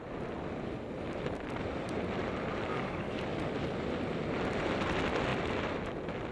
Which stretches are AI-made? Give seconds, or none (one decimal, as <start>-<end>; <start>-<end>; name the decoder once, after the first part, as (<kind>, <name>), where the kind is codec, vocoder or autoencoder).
2.7-3.2 (codec, DAC)